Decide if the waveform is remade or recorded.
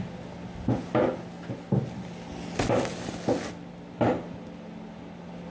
recorded